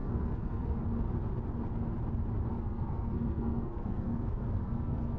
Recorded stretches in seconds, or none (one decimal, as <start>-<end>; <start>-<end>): 0.8-2.5